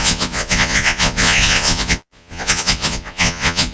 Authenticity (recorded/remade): remade